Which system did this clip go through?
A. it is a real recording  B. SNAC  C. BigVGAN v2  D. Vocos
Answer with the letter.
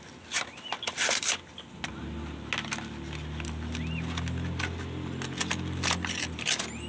A